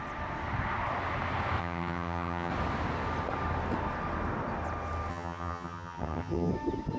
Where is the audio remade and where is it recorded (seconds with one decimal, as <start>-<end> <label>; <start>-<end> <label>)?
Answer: 0.0-1.6 recorded; 1.6-2.5 remade; 2.5-5.1 recorded; 5.1-6.5 remade; 6.5-7.0 recorded